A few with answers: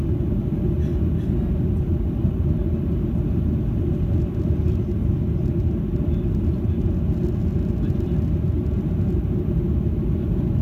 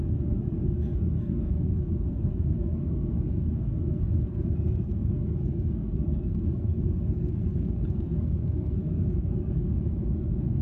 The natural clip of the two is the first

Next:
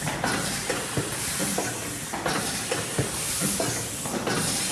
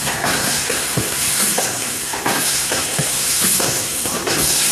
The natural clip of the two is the first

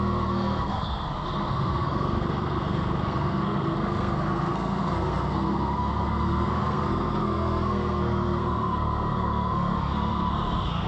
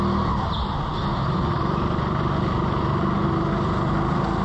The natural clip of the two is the second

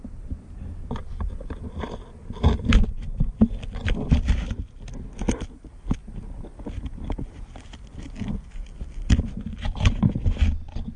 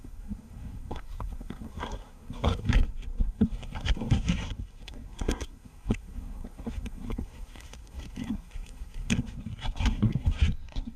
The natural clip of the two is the first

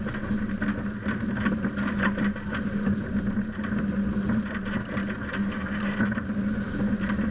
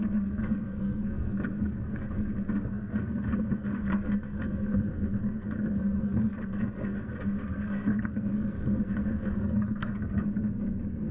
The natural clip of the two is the first